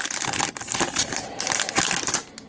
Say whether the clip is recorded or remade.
recorded